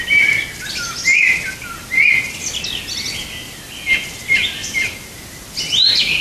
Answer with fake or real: real